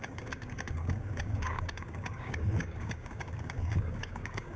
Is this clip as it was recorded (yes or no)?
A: no